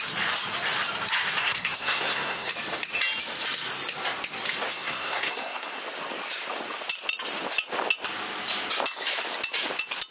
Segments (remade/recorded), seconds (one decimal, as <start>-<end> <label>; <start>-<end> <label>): 0.0-1.4 recorded; 1.4-2.5 remade; 2.5-4.7 recorded; 4.7-5.8 remade; 5.8-10.1 recorded